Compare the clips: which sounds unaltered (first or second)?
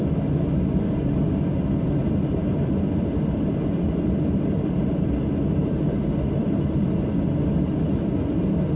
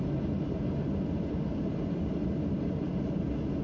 second